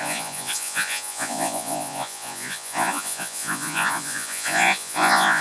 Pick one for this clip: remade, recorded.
remade